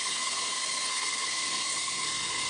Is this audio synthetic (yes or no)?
yes